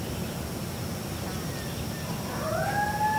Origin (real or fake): real